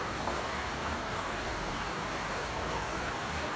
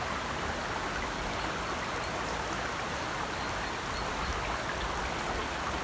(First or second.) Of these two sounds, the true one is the second